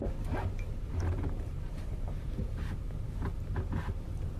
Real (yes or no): no